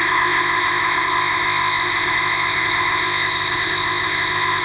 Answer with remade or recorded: remade